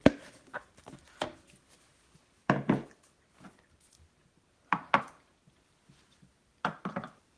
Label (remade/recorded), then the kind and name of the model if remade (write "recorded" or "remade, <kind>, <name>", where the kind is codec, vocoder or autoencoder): recorded